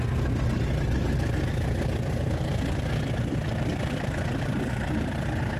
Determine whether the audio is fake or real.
real